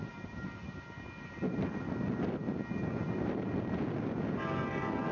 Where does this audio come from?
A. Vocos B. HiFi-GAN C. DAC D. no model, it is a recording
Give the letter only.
D